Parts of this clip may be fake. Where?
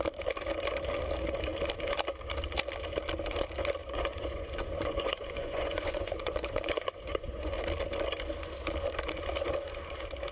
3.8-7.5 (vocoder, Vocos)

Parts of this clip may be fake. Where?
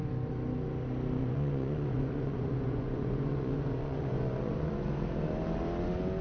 1.2-4.9 (vocoder, Vocos)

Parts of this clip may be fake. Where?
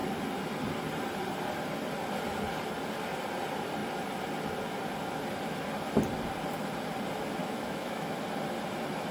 7.4-8.2 (autoencoder, DAC-VAE)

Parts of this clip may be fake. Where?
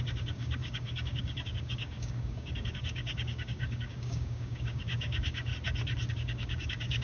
0.0-5.5 (codec, DAC); 6.1-7.0